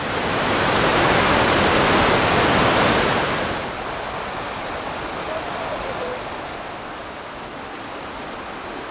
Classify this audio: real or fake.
real